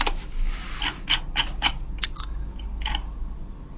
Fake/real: real